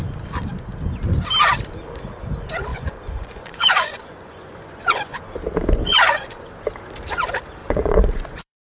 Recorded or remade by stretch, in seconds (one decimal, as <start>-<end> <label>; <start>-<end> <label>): 0.0-2.7 recorded; 2.7-5.2 remade; 5.2-5.8 recorded; 5.8-6.5 remade; 6.5-7.6 recorded; 7.6-8.7 remade